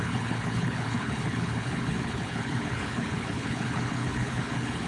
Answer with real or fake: fake